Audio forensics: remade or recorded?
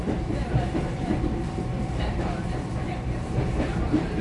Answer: remade